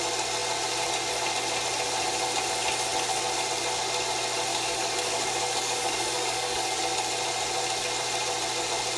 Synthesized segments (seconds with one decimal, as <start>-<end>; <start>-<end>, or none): 4.5-6.8